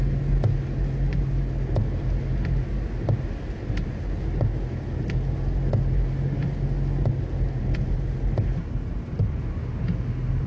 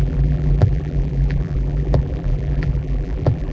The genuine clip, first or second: first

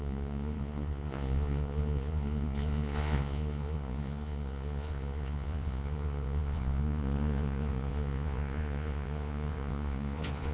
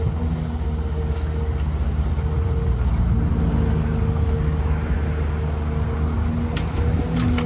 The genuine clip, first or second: second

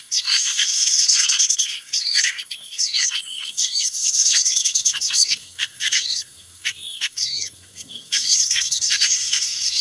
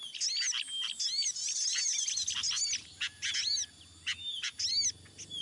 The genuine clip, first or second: second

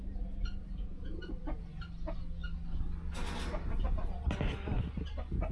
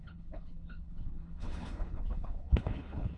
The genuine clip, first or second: first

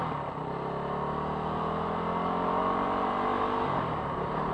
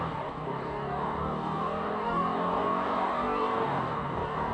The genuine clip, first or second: first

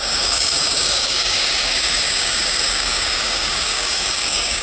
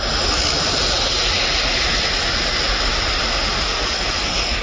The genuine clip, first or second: second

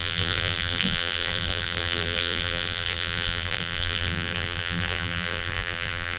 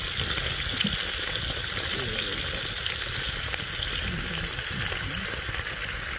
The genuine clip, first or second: second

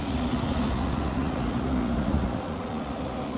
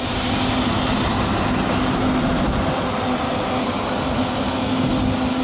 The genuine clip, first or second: second